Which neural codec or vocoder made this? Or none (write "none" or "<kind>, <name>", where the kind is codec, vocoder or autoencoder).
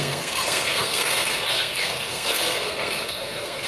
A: codec, SNAC